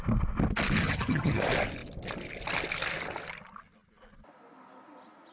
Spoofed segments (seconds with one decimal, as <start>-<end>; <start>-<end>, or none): 0.8-1.4